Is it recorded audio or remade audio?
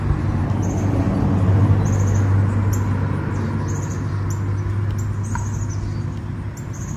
recorded